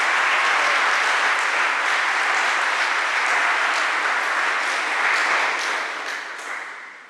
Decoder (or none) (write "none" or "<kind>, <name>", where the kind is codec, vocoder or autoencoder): none